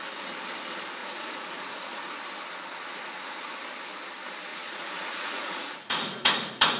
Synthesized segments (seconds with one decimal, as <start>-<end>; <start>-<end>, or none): 1.0-2.1; 2.9-3.5; 4.5-6.8